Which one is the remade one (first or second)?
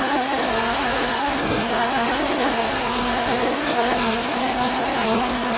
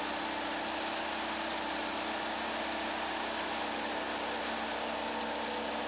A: first